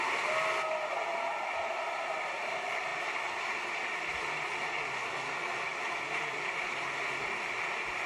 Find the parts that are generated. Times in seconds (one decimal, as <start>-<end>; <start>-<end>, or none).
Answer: none